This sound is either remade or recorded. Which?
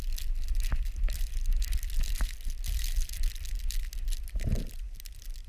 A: recorded